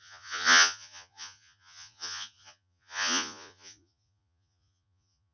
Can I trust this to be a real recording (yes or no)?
no